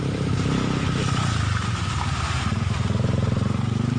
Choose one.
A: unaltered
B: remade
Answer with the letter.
B